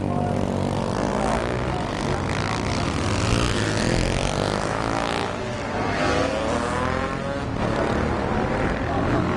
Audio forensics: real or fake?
real